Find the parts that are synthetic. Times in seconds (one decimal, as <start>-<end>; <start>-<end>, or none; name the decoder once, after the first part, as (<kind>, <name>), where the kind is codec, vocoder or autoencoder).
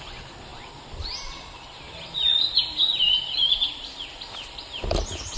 none